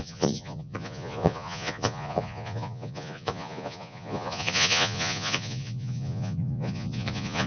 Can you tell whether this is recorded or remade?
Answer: remade